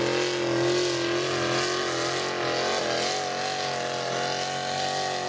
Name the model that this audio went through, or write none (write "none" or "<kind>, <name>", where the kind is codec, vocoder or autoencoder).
none